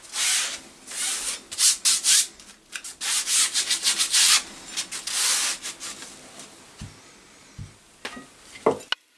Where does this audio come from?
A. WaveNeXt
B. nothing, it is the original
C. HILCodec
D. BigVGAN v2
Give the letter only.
B